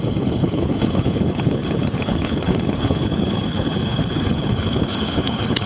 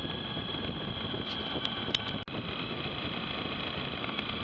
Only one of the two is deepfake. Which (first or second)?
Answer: first